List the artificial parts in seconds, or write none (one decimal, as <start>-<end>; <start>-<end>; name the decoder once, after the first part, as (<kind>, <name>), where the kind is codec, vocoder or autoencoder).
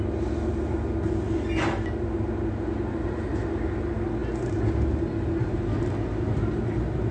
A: none